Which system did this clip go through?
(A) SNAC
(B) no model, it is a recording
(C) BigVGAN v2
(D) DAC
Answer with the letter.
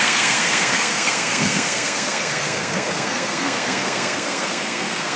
A